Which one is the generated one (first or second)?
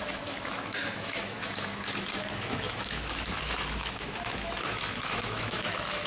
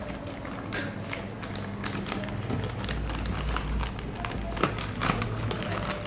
first